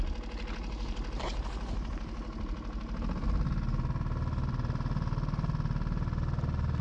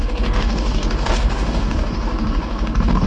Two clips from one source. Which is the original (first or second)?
first